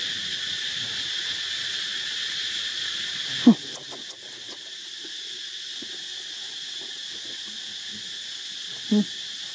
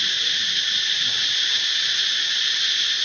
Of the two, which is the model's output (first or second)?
first